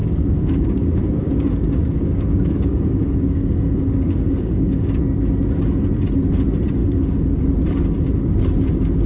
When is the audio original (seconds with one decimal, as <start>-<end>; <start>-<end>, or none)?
5.0-6.8; 7.4-9.1